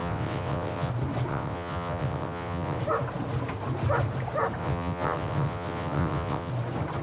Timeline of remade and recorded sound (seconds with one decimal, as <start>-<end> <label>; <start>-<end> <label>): 0.0-0.9 remade; 0.9-1.3 recorded; 1.3-2.8 remade; 2.8-4.6 recorded; 4.6-6.5 remade; 6.5-7.0 recorded